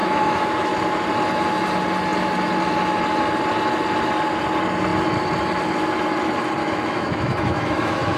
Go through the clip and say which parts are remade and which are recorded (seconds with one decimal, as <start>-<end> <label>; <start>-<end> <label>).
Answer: 0.0-0.7 remade; 0.7-6.6 recorded; 6.6-8.2 remade